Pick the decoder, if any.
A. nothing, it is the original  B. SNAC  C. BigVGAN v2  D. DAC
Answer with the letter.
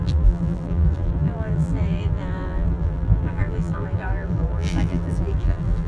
C